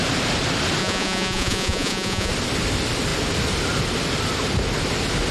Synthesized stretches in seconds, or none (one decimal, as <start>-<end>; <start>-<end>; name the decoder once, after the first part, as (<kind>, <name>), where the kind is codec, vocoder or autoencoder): 0.8-2.3 (vocoder, Vocos)